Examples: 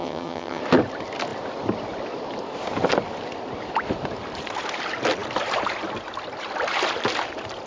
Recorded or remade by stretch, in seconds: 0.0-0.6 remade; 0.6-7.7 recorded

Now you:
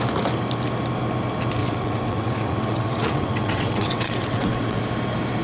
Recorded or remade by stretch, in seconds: 0.0-1.6 recorded; 1.6-4.8 remade; 4.8-5.4 recorded

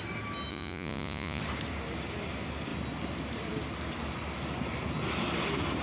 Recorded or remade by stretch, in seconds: 0.0-0.5 recorded; 0.5-1.4 remade; 1.4-5.8 recorded

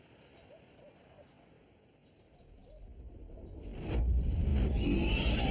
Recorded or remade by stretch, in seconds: 0.0-5.5 recorded

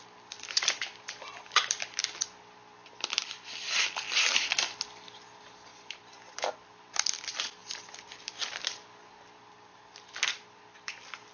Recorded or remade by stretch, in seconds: 0.0-3.2 recorded; 3.2-3.8 remade; 3.8-5.7 recorded; 5.7-6.5 remade; 6.5-11.3 recorded

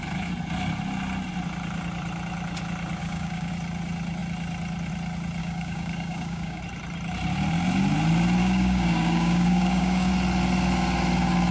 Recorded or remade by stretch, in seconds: 0.0-3.0 recorded; 3.0-3.5 remade; 3.5-5.4 recorded; 5.4-6.6 remade; 6.6-8.4 recorded; 8.4-10.1 remade; 10.1-11.5 recorded